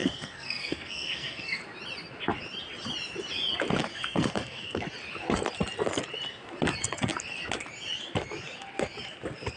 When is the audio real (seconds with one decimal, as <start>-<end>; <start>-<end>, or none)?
1.6-3.9; 4.9-9.6